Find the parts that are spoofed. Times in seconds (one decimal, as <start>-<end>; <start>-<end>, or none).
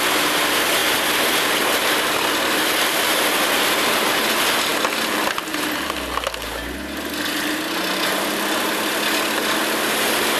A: none